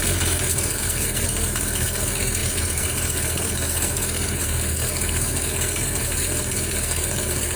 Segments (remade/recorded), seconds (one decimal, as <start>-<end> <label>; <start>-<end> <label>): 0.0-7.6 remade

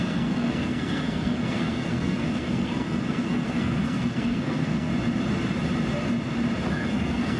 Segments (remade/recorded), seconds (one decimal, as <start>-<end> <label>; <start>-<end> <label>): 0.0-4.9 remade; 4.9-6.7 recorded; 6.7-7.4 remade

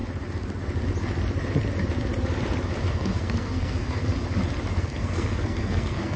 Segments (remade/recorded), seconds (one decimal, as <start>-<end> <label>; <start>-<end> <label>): 0.0-2.9 recorded; 2.9-4.1 remade; 4.1-4.8 recorded; 4.8-6.2 remade

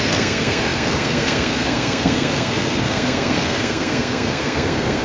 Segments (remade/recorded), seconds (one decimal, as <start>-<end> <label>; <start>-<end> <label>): 0.0-5.0 remade

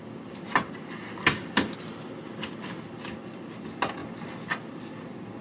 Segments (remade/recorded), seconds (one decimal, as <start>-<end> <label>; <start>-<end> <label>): 0.0-5.4 recorded

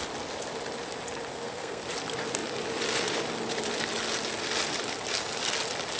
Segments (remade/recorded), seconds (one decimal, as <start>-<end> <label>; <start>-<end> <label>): 0.0-1.3 recorded; 1.3-1.8 remade; 1.8-6.0 recorded